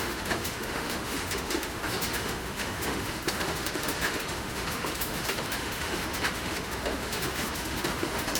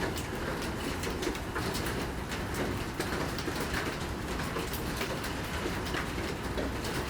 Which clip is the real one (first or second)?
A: second